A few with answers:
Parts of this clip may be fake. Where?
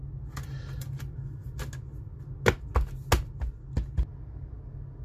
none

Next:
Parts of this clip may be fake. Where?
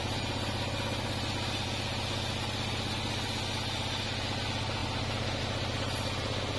none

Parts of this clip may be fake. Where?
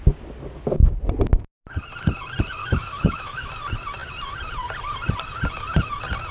2.6-3.5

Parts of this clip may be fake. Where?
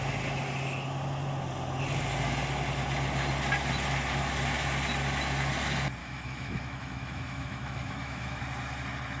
6.0-8.4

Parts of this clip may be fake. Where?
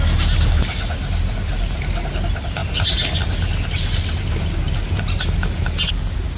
none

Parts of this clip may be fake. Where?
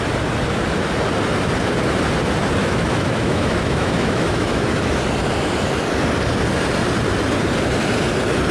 2.6-4.9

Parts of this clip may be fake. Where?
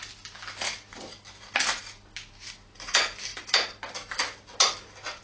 none